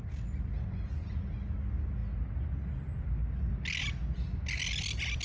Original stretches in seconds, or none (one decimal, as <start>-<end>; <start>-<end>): 0.0-5.2